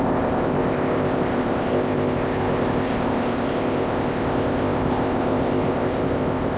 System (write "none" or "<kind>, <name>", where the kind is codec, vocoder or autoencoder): codec, ZipCodec